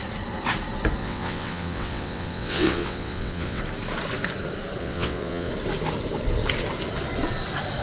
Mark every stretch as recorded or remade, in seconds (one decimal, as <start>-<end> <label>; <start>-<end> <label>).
0.0-1.0 recorded; 1.0-3.6 remade; 3.6-4.8 recorded; 4.8-5.5 remade; 5.5-7.8 recorded